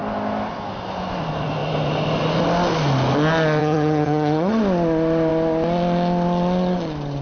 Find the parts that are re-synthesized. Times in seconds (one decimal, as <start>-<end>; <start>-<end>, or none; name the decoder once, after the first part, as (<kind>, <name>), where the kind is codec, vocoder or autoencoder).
3.6-4.6 (vocoder, HiFi-GAN)